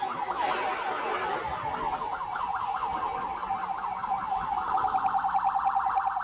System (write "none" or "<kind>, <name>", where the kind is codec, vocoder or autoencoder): none